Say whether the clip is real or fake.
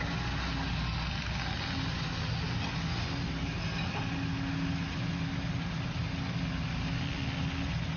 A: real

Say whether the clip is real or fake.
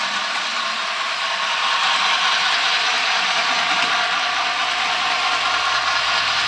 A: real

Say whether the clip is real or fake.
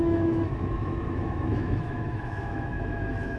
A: fake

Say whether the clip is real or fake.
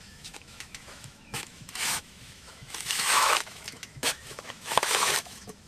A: fake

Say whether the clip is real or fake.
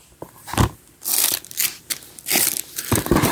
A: fake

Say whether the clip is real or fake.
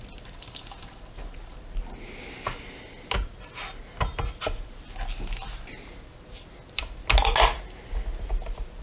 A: real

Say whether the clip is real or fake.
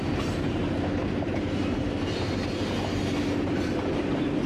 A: real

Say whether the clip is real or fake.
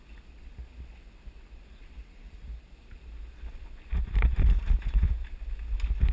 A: real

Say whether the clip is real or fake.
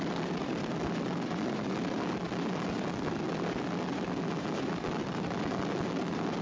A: real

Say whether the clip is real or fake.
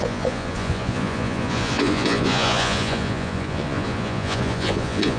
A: fake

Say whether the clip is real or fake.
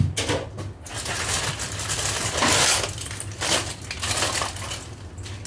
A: real